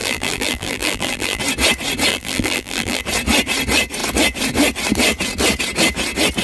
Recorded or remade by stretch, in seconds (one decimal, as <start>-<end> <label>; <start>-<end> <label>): 0.0-1.4 remade; 1.4-2.1 recorded; 2.1-3.0 remade; 3.0-6.4 recorded